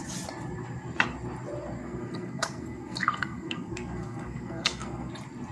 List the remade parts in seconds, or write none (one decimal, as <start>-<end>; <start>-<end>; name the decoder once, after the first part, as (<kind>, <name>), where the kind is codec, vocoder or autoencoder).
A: 1.8-5.1 (codec, SNAC)